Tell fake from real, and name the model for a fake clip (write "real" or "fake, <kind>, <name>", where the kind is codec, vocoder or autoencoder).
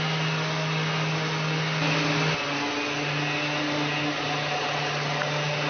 real